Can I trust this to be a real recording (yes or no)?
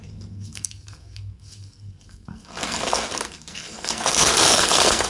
no